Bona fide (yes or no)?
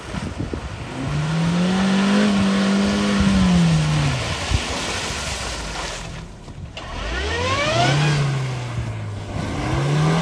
yes